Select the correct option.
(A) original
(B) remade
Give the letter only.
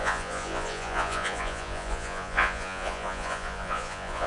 B